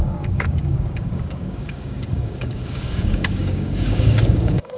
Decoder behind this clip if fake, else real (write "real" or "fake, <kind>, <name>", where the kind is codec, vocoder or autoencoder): fake, codec, DAC